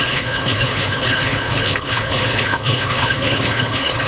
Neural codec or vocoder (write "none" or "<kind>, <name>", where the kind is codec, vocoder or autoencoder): codec, HILCodec